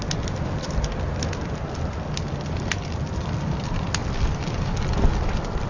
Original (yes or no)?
no